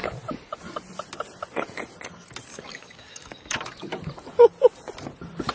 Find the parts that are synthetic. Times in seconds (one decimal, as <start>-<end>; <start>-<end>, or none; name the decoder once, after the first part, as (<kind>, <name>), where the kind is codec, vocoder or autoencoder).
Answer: 2.5-3.6 (codec, DAC)